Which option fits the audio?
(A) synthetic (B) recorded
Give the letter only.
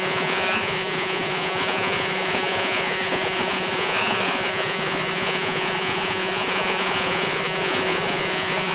A